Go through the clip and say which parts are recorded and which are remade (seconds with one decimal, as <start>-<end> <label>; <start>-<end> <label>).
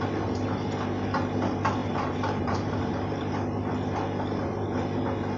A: 0.0-1.8 recorded; 1.8-3.3 remade; 3.3-5.4 recorded